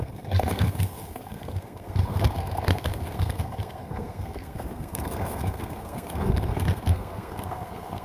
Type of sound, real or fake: fake